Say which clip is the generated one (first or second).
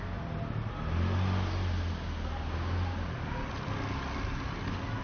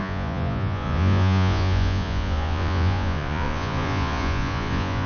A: second